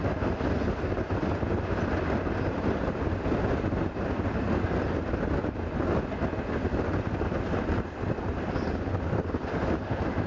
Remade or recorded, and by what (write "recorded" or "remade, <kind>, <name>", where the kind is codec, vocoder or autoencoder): recorded